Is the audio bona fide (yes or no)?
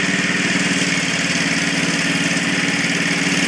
yes